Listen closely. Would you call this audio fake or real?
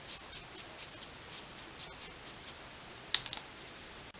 real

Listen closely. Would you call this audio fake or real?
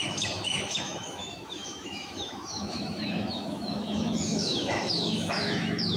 fake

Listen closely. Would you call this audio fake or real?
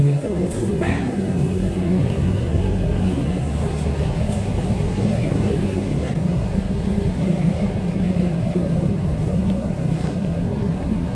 fake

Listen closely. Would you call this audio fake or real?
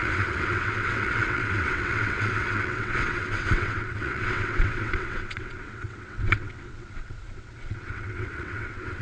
fake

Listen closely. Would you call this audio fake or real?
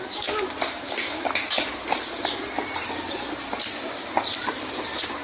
real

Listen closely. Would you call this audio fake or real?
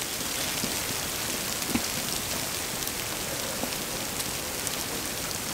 real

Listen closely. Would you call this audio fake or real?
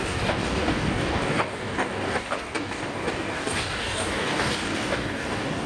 fake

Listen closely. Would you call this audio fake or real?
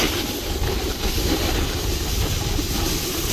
real